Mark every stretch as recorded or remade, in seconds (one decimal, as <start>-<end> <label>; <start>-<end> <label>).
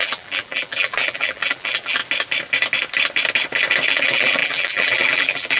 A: 0.0-2.0 remade; 2.0-3.9 recorded; 3.9-5.6 remade